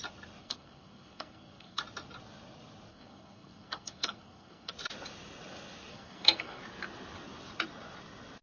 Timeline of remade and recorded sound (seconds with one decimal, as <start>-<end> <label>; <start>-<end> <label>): 0.0-0.4 recorded; 0.4-1.8 remade; 1.8-2.9 recorded; 2.9-4.7 remade; 4.7-5.9 recorded; 5.9-6.6 remade; 6.6-8.4 recorded